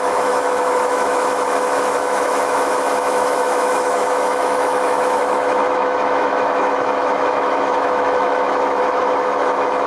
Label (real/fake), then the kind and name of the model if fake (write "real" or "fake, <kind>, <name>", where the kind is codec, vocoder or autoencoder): fake, autoencoder, DAC-VAE